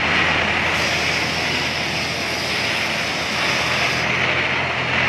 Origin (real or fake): real